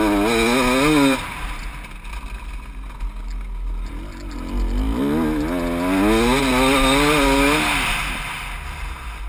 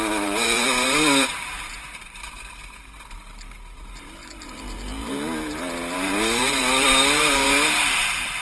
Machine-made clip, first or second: second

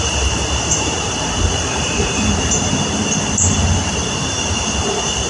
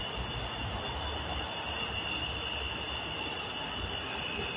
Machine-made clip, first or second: first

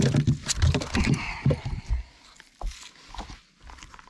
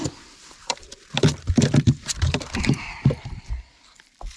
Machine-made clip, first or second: second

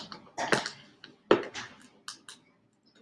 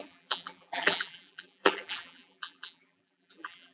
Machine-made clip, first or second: second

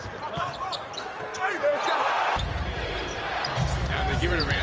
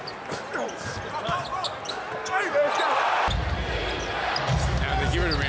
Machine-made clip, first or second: first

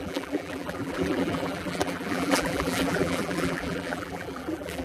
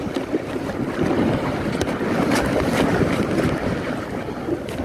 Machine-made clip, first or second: first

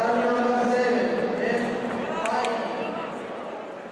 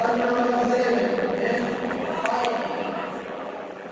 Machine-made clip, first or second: second